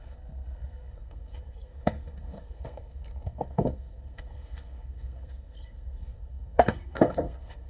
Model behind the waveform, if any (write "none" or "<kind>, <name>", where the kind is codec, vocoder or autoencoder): codec, SNAC